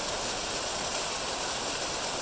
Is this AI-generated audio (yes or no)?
no